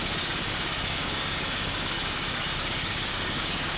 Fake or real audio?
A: fake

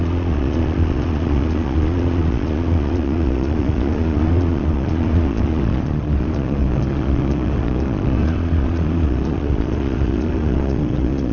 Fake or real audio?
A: fake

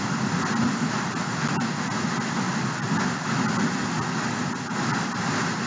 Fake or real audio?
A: real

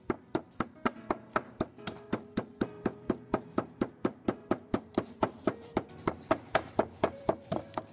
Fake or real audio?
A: fake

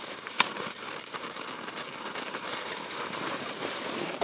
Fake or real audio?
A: fake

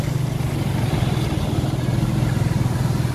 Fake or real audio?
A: real